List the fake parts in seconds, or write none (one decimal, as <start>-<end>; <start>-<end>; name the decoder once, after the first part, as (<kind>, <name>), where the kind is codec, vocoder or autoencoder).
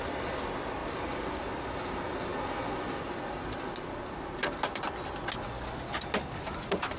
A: none